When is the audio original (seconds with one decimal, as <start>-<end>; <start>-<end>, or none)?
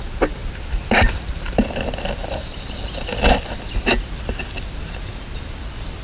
0.0-0.4; 2.2-6.0